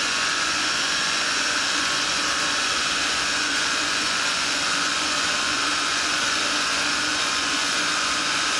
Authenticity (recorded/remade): remade